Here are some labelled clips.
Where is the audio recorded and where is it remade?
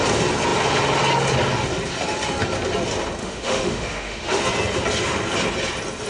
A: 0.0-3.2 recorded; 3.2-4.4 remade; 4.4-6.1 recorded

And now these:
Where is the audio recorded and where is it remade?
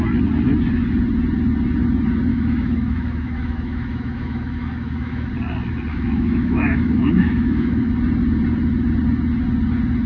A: 0.0-2.3 recorded; 2.3-5.3 remade; 5.3-5.9 recorded; 5.9-7.9 remade; 7.9-10.1 recorded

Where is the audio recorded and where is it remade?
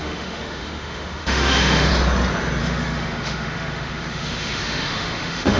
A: 0.0-1.9 remade; 1.9-2.6 recorded; 2.6-5.6 remade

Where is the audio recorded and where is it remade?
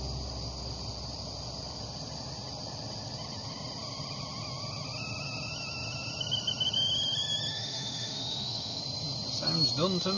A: 0.0-7.5 recorded; 7.5-8.8 remade; 8.8-10.2 recorded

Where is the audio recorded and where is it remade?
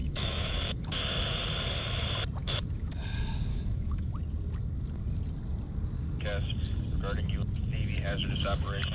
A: 0.0-1.0 remade; 1.0-2.4 recorded; 2.4-2.9 remade; 2.9-3.5 recorded; 3.5-4.1 remade; 4.1-8.9 recorded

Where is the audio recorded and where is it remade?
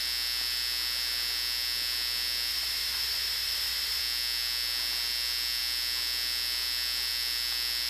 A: 0.0-2.5 recorded; 2.5-4.0 remade; 4.0-7.9 recorded